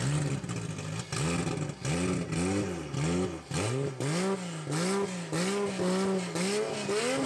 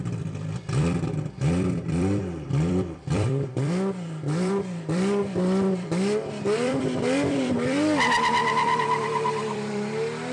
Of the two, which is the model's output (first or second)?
second